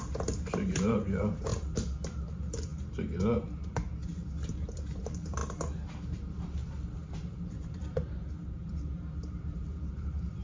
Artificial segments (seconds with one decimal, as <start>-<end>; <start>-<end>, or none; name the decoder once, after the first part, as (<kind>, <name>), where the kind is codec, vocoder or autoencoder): 0.0-1.5 (vocoder, BigVGAN v2); 2.3-2.7; 3.9-5.4; 6.0-6.6; 7.1-10.4